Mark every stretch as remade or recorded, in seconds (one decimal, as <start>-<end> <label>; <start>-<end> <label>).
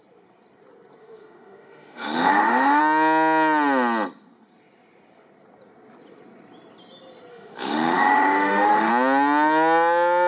0.0-1.0 recorded; 1.0-2.8 remade; 2.8-7.3 recorded; 7.3-8.9 remade; 8.9-10.3 recorded